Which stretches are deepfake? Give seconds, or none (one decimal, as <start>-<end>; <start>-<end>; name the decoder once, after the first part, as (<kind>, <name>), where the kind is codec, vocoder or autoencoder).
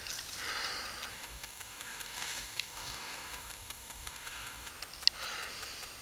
1.1-4.7 (codec, DAC)